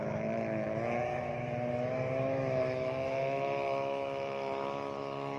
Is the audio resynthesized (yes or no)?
yes